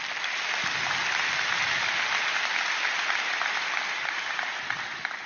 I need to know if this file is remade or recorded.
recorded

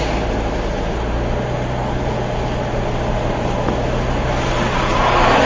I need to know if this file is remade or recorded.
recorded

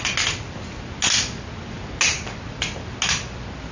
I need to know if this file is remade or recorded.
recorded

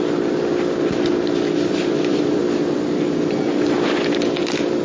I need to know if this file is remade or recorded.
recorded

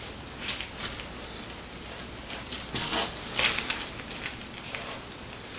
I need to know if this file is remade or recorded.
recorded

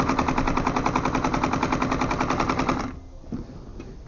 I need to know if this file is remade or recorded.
recorded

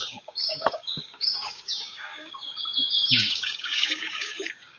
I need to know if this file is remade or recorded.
remade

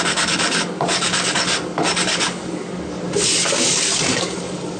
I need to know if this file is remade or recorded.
remade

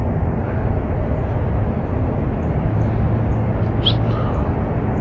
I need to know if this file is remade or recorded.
recorded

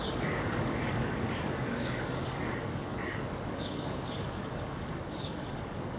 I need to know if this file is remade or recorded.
remade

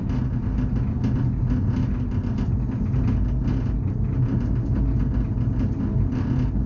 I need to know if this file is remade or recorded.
recorded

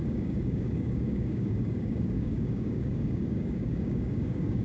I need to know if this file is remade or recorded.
remade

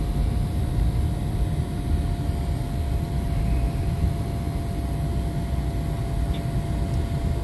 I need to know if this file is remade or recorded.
recorded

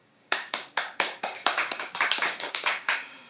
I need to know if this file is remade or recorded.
remade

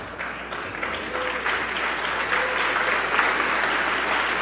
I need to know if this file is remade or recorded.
recorded